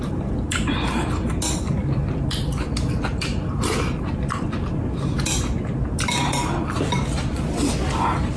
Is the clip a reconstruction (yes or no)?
no